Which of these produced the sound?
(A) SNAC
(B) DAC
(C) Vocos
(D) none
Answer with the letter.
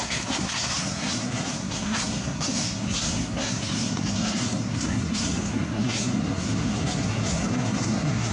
A